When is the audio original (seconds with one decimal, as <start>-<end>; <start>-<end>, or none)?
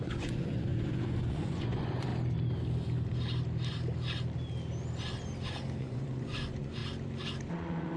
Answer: 2.1-5.8; 6.8-7.5